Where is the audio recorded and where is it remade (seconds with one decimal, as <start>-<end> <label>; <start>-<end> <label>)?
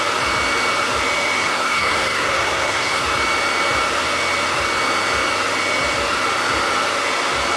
0.0-1.4 recorded; 1.4-3.0 remade; 3.0-7.6 recorded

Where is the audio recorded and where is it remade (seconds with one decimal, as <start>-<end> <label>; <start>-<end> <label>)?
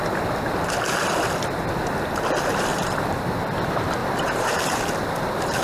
0.0-2.7 recorded; 2.7-3.3 remade; 3.3-4.0 recorded; 4.0-4.8 remade; 4.8-5.6 recorded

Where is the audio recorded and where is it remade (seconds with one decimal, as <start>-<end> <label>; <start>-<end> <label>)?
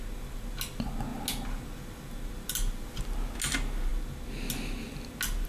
0.0-5.5 recorded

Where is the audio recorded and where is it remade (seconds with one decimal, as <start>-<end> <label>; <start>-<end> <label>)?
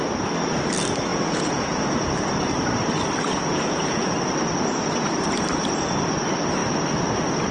0.0-1.1 recorded; 1.1-2.1 remade; 2.1-3.3 recorded; 3.3-4.1 remade; 4.1-7.5 recorded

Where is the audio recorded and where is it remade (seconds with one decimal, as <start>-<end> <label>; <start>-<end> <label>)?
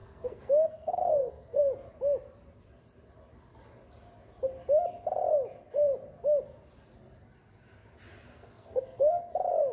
0.0-1.6 remade; 1.6-8.3 recorded; 8.3-9.2 remade; 9.2-9.7 recorded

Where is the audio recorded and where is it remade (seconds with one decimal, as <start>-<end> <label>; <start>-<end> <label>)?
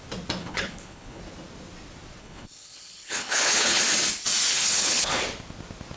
0.0-0.4 recorded; 0.4-1.2 remade; 1.2-2.2 recorded; 2.2-3.8 remade; 3.8-4.5 recorded; 4.5-5.2 remade; 5.2-6.0 recorded